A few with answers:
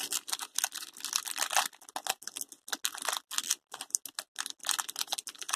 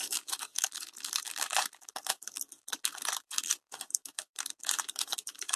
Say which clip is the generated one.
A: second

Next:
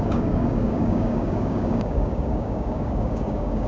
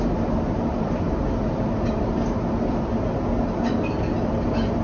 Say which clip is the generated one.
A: first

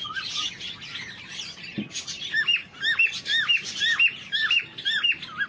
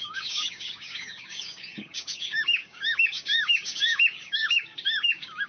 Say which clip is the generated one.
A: second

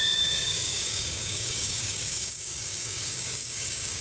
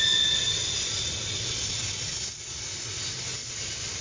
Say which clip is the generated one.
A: first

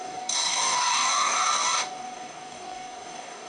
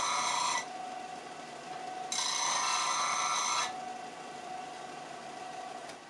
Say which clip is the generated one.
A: first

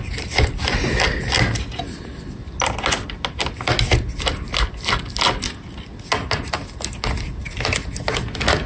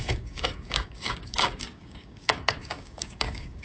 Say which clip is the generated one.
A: second